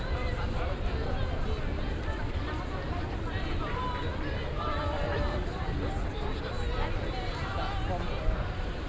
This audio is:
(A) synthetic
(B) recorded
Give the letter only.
A